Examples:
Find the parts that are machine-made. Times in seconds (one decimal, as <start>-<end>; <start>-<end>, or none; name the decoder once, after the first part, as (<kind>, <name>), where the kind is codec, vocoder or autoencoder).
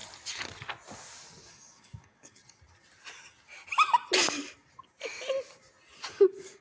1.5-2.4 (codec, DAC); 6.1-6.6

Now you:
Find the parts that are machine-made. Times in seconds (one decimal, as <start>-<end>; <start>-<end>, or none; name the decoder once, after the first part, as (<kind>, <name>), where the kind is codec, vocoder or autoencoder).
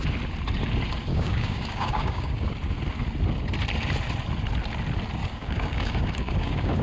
1.1-2.5 (codec, DAC); 5.2-6.8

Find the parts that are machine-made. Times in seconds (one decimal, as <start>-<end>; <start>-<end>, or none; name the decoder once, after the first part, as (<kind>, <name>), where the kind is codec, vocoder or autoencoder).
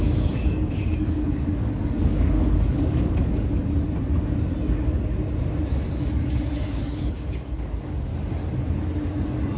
0.0-3.6 (codec, DAC); 6.0-8.1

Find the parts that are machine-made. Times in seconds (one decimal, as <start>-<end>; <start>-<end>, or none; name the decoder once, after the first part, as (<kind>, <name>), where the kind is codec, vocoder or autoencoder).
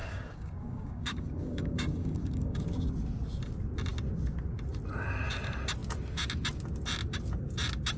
0.0-2.6 (codec, DAC)